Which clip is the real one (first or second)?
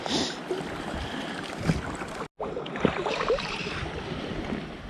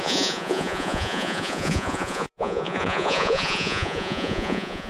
first